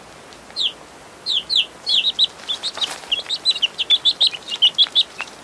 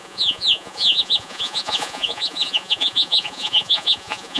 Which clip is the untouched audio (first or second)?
first